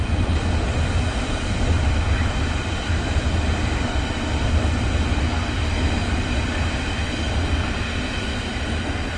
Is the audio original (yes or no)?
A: yes